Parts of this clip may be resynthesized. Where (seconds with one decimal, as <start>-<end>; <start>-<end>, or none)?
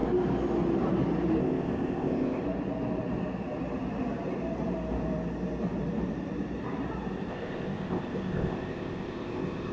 1.4-2.4; 7.3-9.7